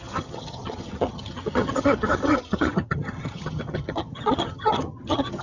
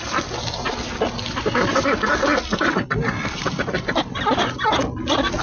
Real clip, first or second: second